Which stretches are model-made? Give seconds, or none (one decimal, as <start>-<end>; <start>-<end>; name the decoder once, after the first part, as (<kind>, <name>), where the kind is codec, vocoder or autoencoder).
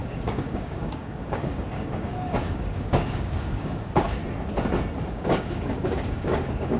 0.0-4.2 (codec, DAC); 5.1-6.8